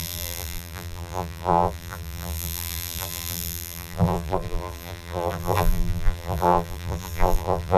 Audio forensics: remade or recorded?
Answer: remade